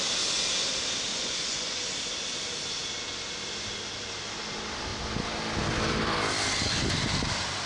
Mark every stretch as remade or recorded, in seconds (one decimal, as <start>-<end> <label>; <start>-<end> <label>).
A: 0.0-1.1 recorded; 1.1-1.8 remade; 1.8-7.7 recorded